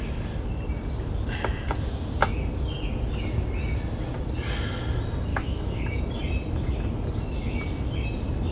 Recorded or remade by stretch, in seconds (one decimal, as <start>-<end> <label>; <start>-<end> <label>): 0.0-5.3 recorded; 5.3-6.0 remade; 6.0-8.5 recorded